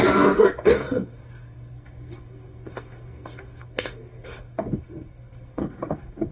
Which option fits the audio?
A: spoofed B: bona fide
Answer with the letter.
A